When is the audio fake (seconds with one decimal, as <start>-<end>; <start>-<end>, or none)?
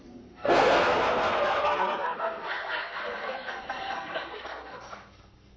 0.0-5.6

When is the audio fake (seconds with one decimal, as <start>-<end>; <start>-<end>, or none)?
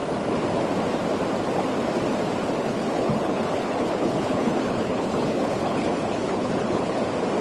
2.6-7.0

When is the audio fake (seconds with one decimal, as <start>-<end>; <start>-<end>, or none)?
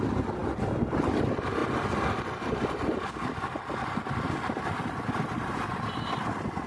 none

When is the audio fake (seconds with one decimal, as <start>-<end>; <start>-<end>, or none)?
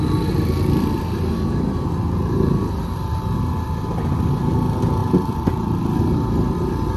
5.0-5.8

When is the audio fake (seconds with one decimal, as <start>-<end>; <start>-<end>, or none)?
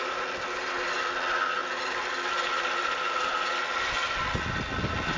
none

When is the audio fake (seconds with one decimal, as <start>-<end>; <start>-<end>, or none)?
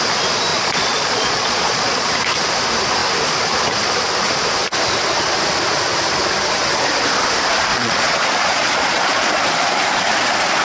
0.5-2.1; 7.7-9.3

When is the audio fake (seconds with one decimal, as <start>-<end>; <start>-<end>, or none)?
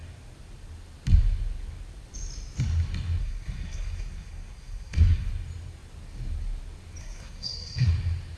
3.2-5.3; 7.0-7.9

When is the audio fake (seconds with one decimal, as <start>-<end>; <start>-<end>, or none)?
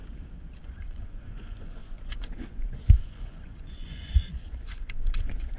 0.6-5.6